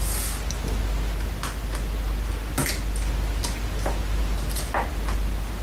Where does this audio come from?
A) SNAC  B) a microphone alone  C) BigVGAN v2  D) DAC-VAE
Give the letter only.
B